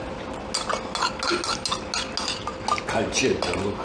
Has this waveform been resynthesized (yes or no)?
no